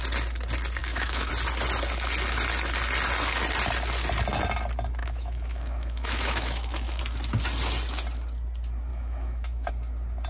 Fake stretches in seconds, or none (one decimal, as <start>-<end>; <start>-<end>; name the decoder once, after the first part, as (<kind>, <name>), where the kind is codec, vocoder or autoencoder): 0.8-1.3 (autoencoder, DAC-VAE); 5.0-7.0; 8.9-9.7